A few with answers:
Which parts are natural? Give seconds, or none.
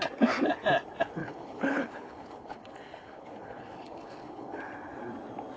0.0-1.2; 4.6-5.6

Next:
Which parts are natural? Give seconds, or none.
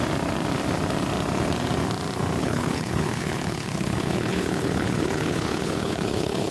0.0-2.4